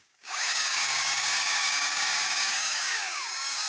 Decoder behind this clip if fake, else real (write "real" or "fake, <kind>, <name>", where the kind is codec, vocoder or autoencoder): fake, codec, DAC